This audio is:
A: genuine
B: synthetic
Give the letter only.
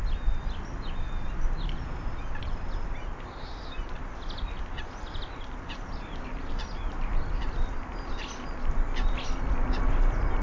A